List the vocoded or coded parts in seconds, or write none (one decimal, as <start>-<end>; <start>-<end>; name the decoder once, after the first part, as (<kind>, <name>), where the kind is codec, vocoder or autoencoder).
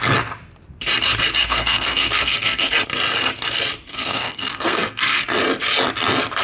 1.4-2.7 (codec, SNAC); 3.9-5.2